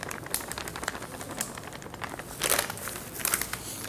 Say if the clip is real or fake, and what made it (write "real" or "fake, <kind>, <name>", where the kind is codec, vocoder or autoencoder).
real